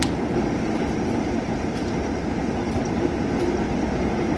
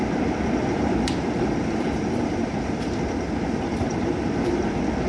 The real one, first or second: first